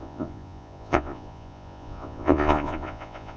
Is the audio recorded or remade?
remade